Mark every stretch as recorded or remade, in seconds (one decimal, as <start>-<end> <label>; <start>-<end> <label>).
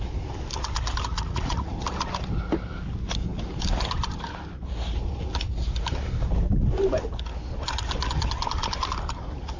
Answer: 0.0-1.1 recorded; 1.1-1.7 remade; 1.7-9.6 recorded